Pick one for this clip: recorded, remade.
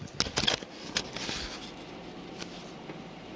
recorded